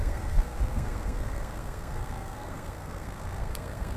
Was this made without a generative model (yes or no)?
no